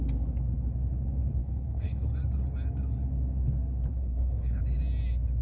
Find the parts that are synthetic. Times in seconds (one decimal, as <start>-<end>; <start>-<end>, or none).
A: 1.4-2.1; 3.9-4.6